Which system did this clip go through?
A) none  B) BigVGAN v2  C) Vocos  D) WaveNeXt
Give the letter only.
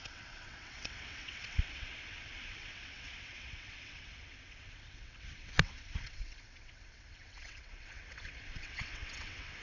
D